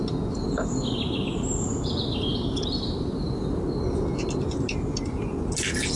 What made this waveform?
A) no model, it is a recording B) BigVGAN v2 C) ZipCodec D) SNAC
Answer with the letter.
B